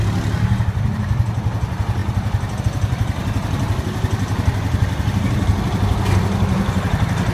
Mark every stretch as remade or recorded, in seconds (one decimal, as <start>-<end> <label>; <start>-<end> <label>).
0.0-7.3 recorded